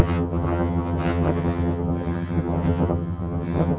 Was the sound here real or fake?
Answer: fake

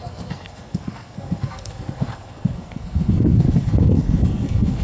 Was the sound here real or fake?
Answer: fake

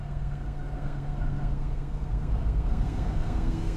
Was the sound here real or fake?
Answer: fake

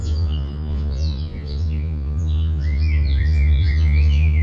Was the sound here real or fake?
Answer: fake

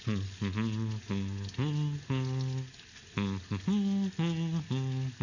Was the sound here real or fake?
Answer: real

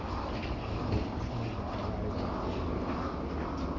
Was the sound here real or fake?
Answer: real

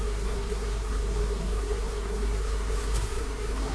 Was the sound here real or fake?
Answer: fake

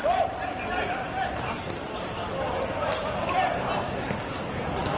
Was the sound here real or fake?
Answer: real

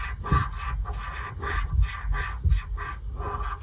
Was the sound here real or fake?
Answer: real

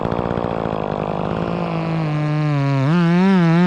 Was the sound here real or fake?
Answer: real